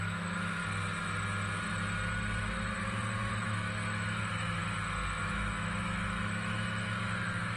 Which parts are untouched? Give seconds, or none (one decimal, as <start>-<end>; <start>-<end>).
0.6-2.4; 4.6-5.2